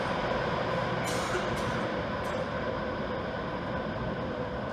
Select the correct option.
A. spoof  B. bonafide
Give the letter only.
B